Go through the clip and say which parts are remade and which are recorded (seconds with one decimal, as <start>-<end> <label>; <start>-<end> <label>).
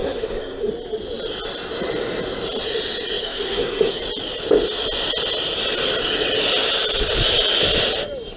0.0-0.7 remade; 0.7-3.2 recorded; 3.2-4.0 remade; 4.0-8.4 recorded